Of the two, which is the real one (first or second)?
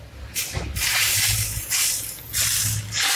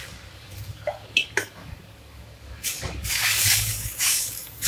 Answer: first